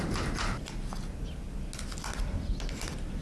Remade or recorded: recorded